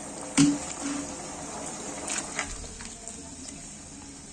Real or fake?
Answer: real